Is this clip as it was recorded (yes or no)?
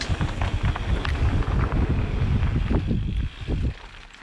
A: yes